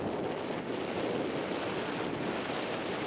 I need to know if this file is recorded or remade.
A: recorded